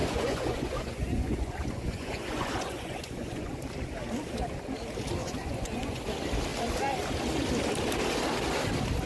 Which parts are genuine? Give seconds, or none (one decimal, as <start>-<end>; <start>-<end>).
3.5-5.2; 6.0-9.1